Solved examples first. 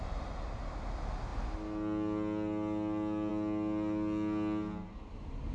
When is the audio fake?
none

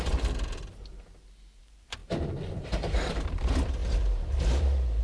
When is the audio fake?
0.0-0.6 (vocoder, BigVGAN v2); 1.6-5.0

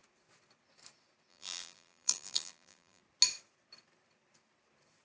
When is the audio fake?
1.3-3.0 (vocoder, BigVGAN v2)

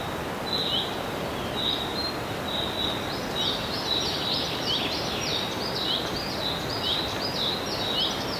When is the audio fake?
none

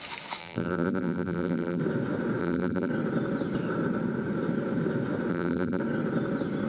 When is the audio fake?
0.4-1.8 (vocoder, BigVGAN v2); 2.4-2.9; 5.3-5.8

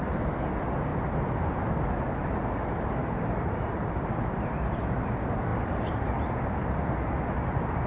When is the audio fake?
3.0-4.0 (vocoder, BigVGAN v2); 5.5-6.1